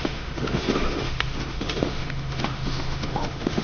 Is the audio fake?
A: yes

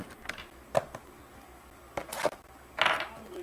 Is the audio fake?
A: no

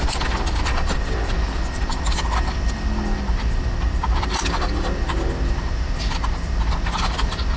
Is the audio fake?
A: no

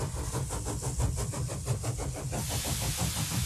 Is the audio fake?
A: no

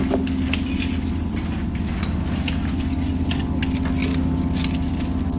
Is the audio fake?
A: no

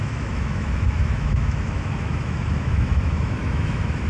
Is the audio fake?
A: yes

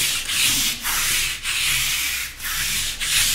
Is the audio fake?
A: no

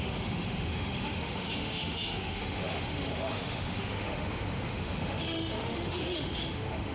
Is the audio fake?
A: yes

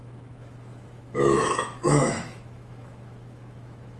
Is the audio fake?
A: yes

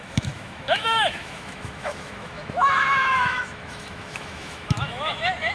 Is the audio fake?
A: yes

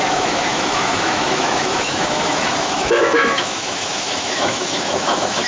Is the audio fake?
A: yes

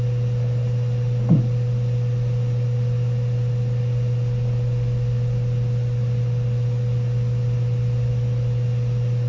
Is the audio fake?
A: no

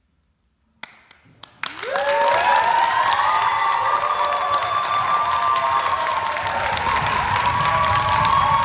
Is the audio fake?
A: no